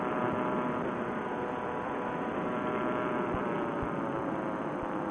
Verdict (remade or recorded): recorded